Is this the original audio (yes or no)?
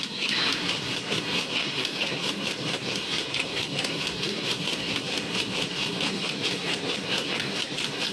no